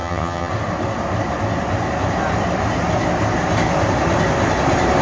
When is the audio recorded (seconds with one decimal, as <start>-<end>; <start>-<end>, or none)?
0.5-5.0